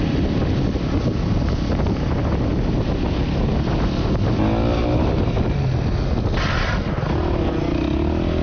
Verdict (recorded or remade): recorded